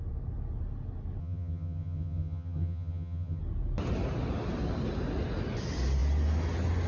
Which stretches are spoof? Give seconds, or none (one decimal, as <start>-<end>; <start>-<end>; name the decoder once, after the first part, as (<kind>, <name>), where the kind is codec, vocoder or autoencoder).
1.2-3.4 (vocoder, HiFi-GAN)

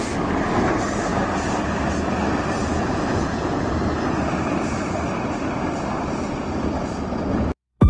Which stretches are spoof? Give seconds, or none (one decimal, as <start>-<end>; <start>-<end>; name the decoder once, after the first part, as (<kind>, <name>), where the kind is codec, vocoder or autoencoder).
2.6-3.7 (vocoder, Vocos); 7.3-7.9

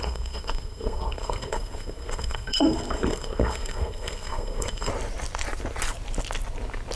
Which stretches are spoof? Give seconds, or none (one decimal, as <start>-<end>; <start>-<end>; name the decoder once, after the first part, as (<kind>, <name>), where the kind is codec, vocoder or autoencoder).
0.0-4.9 (codec, SNAC)